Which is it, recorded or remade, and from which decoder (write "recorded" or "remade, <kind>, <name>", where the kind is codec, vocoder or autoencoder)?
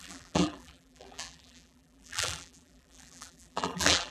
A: remade, vocoder, BigVGAN v2